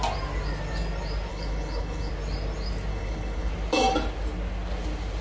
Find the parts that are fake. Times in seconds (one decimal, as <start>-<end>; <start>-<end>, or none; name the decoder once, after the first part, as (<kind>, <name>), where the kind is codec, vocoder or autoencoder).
1.3-2.1 (codec, HILCodec); 2.9-3.5